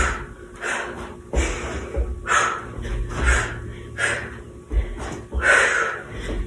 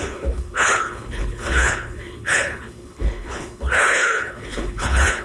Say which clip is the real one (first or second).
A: first